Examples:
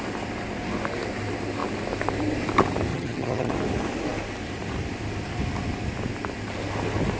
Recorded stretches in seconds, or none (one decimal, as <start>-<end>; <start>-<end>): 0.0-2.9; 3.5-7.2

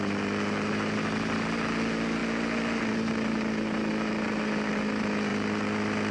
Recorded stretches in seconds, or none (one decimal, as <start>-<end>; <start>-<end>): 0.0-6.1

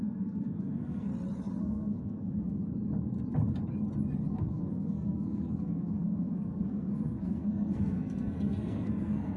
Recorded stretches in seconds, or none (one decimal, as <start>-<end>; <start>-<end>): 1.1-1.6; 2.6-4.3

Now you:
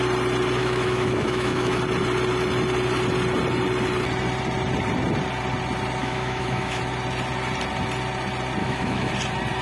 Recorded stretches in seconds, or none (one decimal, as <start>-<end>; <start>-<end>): 0.0-0.6; 1.8-6.0; 6.8-8.6; 9.1-9.6